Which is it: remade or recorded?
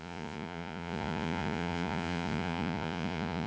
remade